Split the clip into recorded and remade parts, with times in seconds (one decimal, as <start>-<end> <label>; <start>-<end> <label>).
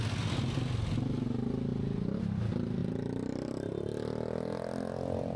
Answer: 0.0-2.8 recorded; 2.8-3.7 remade; 3.7-5.4 recorded